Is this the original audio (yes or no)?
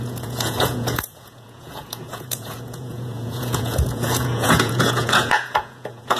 no